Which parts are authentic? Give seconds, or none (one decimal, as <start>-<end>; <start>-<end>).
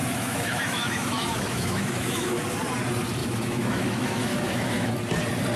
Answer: 2.4-3.2; 4.9-5.6